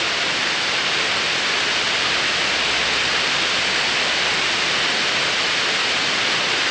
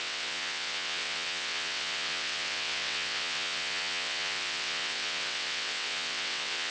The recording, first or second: first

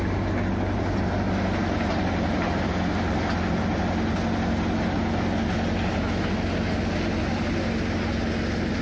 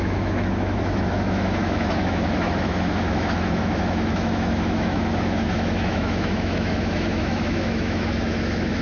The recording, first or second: first